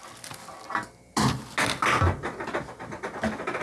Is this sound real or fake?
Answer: real